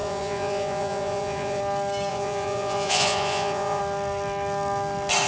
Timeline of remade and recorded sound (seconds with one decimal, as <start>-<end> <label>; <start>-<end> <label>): 0.0-1.6 remade; 1.6-2.1 recorded; 2.1-3.8 remade; 3.8-5.3 recorded